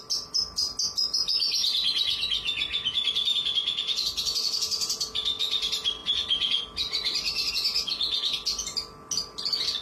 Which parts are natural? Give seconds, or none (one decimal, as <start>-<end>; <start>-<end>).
0.0-6.0; 7.5-9.8